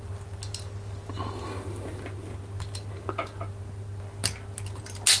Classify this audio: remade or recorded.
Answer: recorded